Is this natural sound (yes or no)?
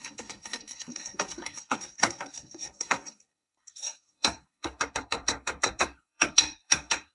no